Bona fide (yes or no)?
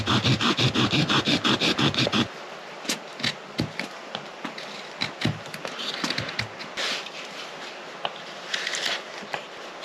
yes